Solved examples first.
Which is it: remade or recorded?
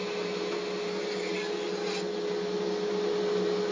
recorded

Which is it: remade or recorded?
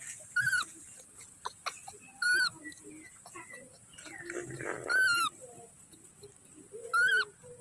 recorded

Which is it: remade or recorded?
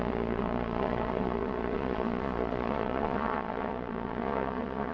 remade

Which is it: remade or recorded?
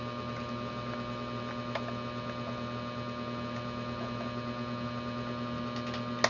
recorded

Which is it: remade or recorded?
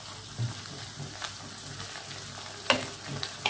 recorded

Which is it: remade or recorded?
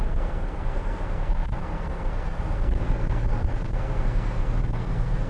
remade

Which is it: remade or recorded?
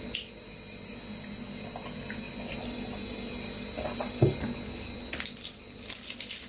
recorded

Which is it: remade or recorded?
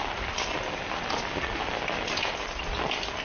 recorded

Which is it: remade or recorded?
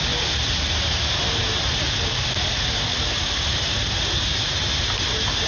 recorded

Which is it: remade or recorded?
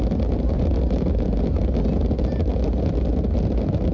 recorded